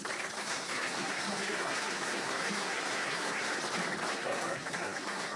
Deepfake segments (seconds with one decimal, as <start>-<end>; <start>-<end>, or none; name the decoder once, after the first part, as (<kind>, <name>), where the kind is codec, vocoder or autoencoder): 0.4-3.6 (codec, SNAC); 4.1-5.4